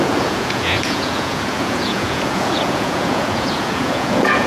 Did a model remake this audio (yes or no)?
yes